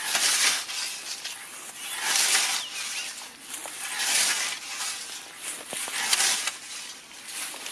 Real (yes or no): yes